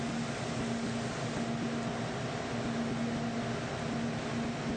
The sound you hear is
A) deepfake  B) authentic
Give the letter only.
B